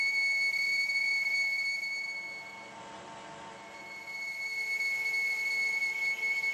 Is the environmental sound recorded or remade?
recorded